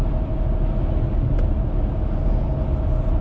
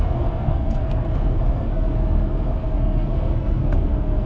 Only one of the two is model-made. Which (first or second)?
second